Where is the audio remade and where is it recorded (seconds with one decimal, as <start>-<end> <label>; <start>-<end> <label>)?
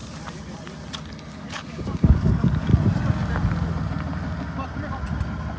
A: 0.0-1.3 recorded; 1.3-2.7 remade; 2.7-5.6 recorded